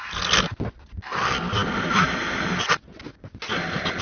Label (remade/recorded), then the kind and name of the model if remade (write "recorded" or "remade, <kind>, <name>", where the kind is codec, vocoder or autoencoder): recorded